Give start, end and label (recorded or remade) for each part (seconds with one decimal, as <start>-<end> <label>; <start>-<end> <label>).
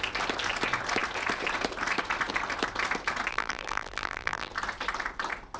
0.0-3.3 recorded; 3.3-4.5 remade; 4.5-5.6 recorded